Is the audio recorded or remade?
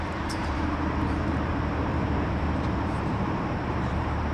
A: remade